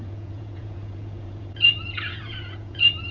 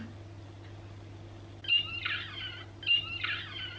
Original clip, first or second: second